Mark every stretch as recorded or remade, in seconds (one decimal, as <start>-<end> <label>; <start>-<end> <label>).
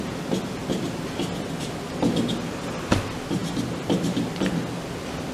0.0-5.3 recorded